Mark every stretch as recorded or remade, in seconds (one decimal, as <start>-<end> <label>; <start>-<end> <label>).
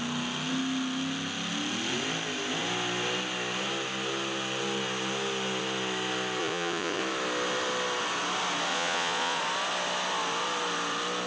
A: 0.0-6.4 recorded; 6.4-7.0 remade; 7.0-8.7 recorded; 8.7-9.4 remade; 9.4-11.3 recorded